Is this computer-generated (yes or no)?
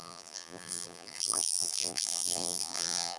yes